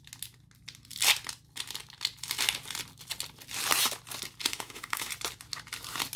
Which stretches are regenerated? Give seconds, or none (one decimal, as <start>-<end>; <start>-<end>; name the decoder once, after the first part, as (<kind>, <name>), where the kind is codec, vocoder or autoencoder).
4.5-5.1 (autoencoder, DAC-VAE)